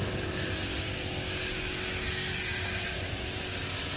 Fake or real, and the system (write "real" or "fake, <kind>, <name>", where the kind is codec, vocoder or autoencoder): real